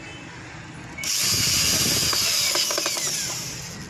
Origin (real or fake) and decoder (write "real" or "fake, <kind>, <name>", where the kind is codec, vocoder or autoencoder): real